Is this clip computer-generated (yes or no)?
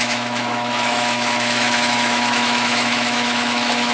yes